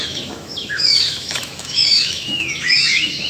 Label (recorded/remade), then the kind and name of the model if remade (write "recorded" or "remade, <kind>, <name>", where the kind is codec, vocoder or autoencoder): remade, autoencoder, DAC-VAE